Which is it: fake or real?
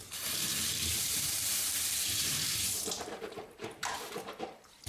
fake